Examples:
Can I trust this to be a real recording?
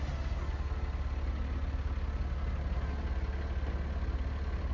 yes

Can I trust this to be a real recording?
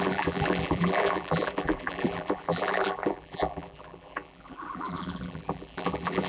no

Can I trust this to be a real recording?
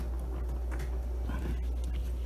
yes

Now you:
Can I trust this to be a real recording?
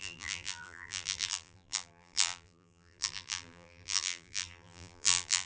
no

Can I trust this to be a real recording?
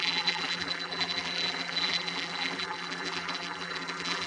no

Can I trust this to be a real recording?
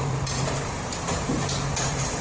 no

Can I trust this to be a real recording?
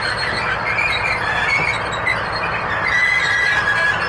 yes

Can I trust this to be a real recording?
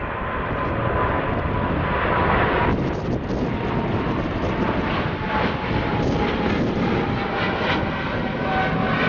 yes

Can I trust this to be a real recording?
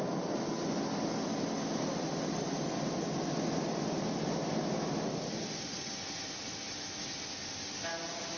yes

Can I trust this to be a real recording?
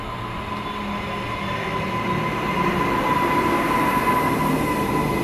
yes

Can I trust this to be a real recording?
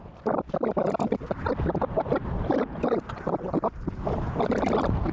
no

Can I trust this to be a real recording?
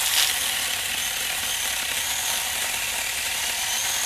yes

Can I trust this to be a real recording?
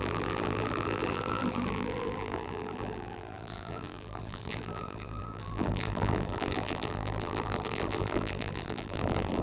no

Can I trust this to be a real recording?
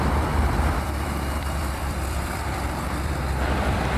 no